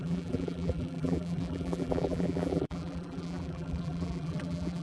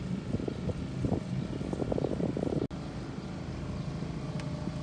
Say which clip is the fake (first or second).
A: first